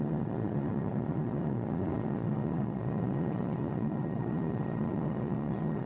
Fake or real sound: fake